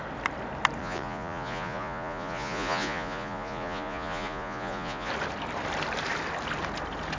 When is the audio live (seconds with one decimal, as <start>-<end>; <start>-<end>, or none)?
0.0-0.8; 5.1-7.2